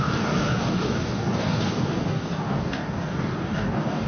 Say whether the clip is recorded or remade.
remade